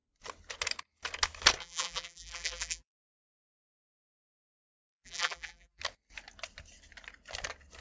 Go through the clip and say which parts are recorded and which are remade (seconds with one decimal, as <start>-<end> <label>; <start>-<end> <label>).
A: 0.0-1.6 recorded; 1.6-5.8 remade; 5.8-7.8 recorded